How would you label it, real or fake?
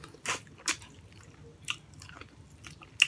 real